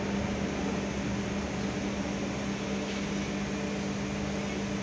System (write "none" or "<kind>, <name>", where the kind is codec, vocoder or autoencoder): none